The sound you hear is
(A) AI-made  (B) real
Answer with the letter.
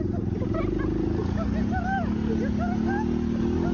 B